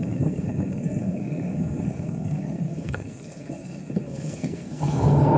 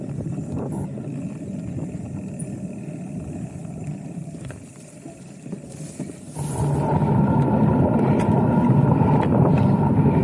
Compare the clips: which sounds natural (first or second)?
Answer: second